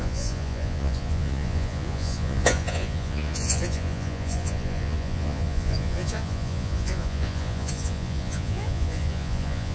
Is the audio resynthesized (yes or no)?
yes